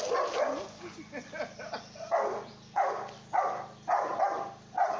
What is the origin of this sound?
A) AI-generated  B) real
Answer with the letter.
B